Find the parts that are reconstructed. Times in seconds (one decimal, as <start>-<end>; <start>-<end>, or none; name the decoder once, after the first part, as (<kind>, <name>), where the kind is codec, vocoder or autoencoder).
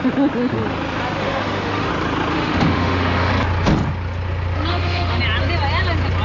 1.2-1.9 (autoencoder, DAC-VAE); 2.3-3.3; 4.7-5.2